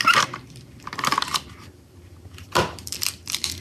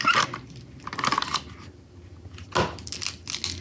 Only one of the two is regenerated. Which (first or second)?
first